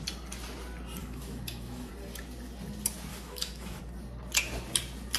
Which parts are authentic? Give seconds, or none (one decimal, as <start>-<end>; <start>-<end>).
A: 0.0-1.0; 1.9-3.1; 3.8-5.2